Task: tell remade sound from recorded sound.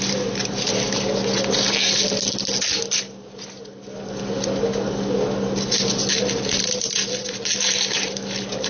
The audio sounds recorded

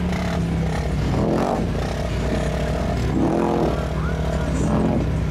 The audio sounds recorded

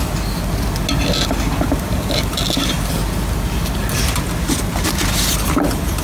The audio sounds recorded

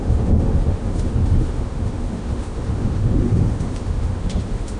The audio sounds remade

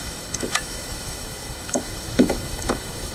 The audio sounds remade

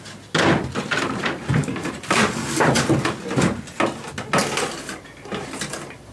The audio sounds recorded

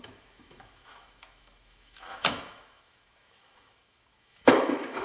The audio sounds remade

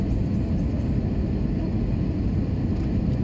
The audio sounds recorded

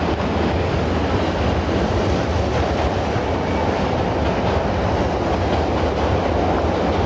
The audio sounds recorded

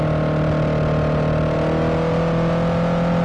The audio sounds recorded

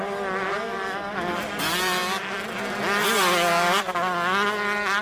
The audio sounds recorded